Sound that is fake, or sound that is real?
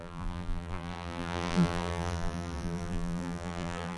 fake